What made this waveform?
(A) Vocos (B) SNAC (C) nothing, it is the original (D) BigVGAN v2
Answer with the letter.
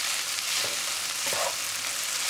C